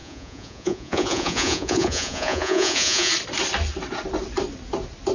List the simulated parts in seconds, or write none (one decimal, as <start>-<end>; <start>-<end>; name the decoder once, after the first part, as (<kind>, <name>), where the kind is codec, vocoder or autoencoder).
0.0-3.1 (vocoder, Vocos)